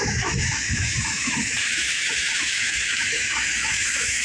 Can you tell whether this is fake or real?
fake